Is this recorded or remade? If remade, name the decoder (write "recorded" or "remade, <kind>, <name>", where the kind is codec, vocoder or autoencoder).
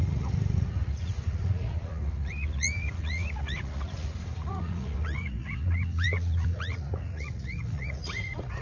remade, vocoder, Vocos